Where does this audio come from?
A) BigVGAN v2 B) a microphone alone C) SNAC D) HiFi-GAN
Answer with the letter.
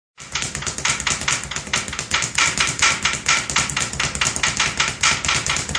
B